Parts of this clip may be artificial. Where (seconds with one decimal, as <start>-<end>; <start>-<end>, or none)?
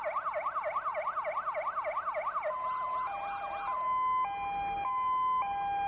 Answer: none